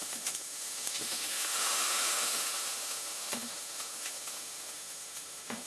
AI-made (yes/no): yes